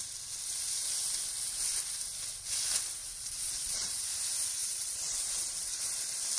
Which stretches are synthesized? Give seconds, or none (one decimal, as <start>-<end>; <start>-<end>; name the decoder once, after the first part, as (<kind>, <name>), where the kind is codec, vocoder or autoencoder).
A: 3.0-4.0 (vocoder, Vocos); 4.6-5.8